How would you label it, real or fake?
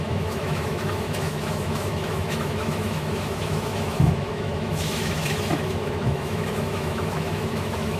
fake